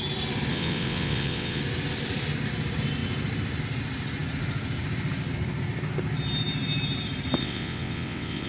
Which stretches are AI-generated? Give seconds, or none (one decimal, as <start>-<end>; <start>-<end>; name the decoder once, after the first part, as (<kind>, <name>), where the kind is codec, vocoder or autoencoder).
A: 0.5-1.6 (vocoder, WaveNeXt); 7.4-8.5